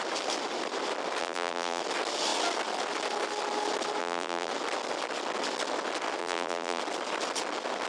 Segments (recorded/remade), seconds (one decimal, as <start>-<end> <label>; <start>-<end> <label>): 0.0-1.2 recorded; 1.2-1.8 remade; 1.8-4.0 recorded; 4.0-4.5 remade; 4.5-6.2 recorded; 6.2-6.8 remade; 6.8-7.9 recorded